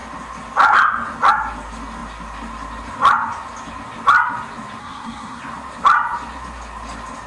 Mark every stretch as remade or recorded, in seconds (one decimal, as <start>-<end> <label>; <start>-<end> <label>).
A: 0.0-4.8 recorded; 4.8-5.4 remade; 5.4-7.3 recorded